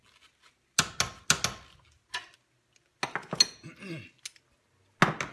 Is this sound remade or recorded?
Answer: recorded